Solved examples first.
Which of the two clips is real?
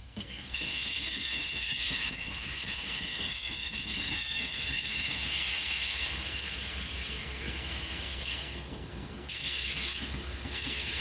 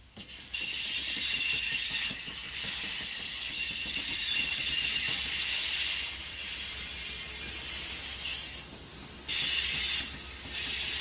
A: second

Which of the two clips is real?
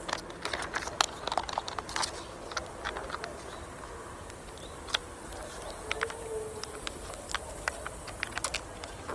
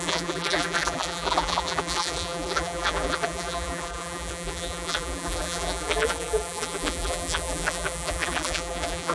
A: first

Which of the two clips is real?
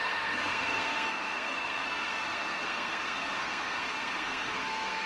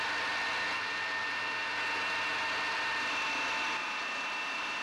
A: second